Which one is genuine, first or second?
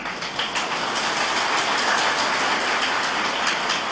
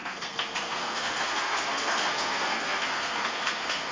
first